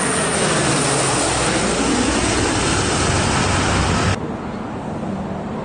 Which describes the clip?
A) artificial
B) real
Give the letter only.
B